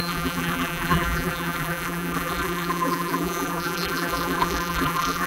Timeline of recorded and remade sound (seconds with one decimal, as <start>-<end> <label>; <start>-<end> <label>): 0.0-5.3 remade